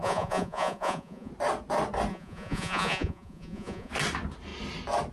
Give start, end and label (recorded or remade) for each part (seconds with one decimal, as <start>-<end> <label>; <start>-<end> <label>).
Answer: 0.0-1.3 remade; 1.3-2.1 recorded; 2.1-3.9 remade; 3.9-5.1 recorded